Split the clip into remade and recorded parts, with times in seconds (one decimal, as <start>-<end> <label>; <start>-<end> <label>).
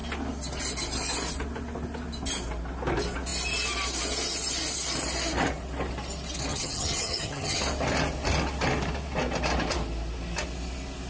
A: 0.0-6.5 recorded; 6.5-7.6 remade; 7.6-11.1 recorded